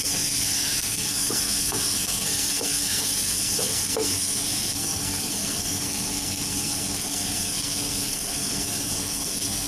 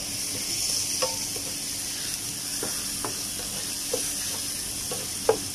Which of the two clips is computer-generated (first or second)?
first